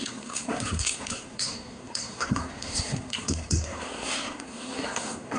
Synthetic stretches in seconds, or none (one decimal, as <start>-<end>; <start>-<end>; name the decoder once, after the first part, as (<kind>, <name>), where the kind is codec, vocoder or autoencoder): 0.0-5.4 (codec, SNAC)